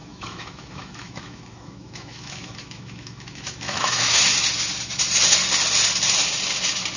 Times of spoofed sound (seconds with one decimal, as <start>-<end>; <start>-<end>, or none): 0.0-4.2